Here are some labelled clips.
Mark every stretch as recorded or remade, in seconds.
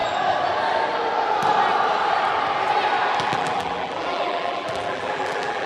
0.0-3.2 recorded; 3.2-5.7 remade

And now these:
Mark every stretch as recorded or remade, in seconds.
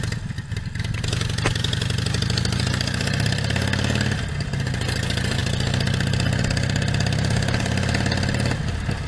0.0-9.1 recorded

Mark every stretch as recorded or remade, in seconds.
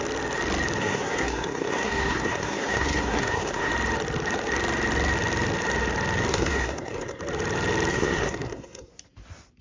0.0-0.8 recorded; 0.8-3.7 remade; 3.7-6.3 recorded; 6.3-7.2 remade; 7.2-7.9 recorded; 7.9-8.9 remade; 8.9-9.6 recorded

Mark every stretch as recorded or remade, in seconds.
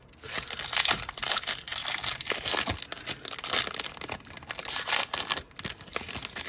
0.0-6.5 recorded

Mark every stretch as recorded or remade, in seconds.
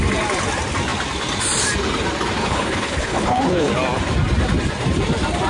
0.0-2.4 recorded; 2.4-3.7 remade; 3.7-5.5 recorded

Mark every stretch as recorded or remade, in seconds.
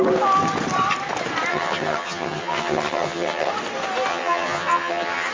0.0-1.5 recorded; 1.5-3.5 remade; 3.5-4.1 recorded; 4.1-5.3 remade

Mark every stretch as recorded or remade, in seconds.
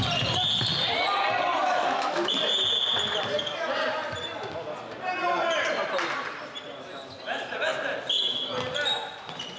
0.0-1.6 recorded; 1.6-2.3 remade; 2.3-9.6 recorded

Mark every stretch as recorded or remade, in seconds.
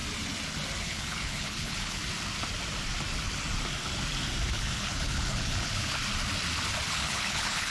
0.0-0.8 recorded; 0.8-2.0 remade; 2.0-4.5 recorded; 4.5-6.0 remade; 6.0-6.9 recorded; 6.9-7.7 remade